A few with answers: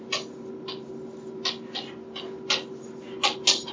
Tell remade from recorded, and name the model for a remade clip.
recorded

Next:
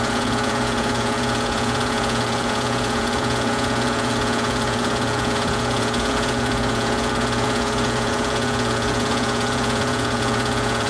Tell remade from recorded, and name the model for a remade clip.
remade, vocoder, Vocos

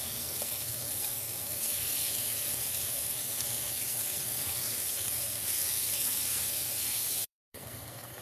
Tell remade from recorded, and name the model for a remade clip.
remade, codec, SNAC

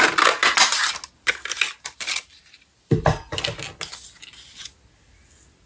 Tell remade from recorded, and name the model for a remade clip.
recorded